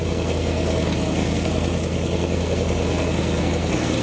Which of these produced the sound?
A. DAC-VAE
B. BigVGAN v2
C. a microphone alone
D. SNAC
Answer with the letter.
D